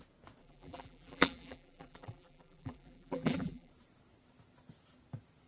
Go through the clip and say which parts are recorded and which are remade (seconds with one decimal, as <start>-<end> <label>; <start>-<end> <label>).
0.0-0.4 recorded; 0.4-3.7 remade; 3.7-5.5 recorded